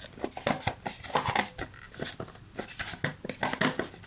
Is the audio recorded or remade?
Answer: recorded